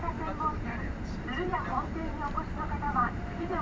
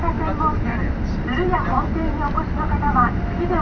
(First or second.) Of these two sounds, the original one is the second